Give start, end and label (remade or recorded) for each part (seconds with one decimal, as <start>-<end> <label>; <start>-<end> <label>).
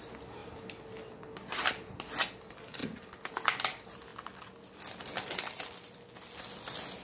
0.0-7.0 recorded